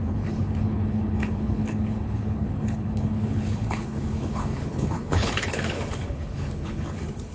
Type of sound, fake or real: fake